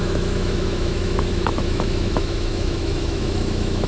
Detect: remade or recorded remade